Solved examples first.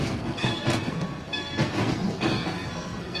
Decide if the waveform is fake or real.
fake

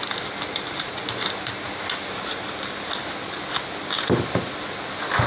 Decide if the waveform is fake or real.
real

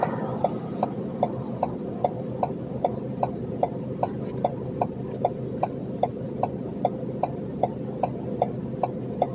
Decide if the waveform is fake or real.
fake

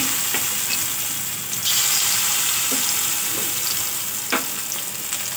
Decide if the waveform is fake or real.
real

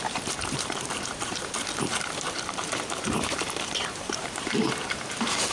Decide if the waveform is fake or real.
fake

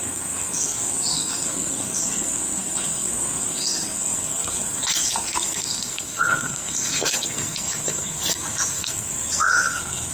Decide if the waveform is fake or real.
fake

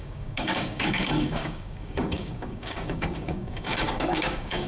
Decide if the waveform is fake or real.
fake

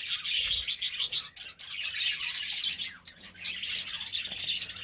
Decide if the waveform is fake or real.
real